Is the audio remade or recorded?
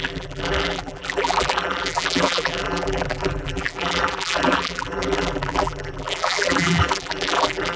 remade